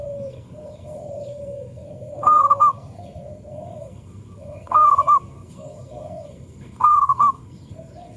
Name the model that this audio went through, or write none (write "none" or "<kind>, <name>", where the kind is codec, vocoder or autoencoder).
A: codec, SNAC